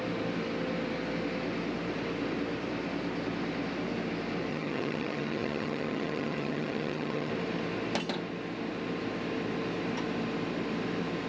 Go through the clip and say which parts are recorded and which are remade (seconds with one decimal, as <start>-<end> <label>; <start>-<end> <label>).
0.0-4.5 recorded; 4.5-7.3 remade; 7.3-11.3 recorded